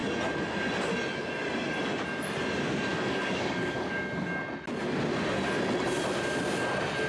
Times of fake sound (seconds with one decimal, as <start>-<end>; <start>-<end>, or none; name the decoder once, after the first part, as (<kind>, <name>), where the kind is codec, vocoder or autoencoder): 2.9-4.0 (codec, DAC)